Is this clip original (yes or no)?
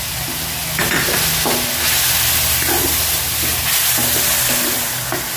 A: yes